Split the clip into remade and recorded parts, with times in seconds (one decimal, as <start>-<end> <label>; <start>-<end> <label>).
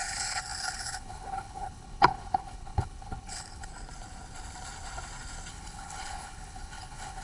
0.0-3.7 remade; 3.7-5.5 recorded; 5.5-7.2 remade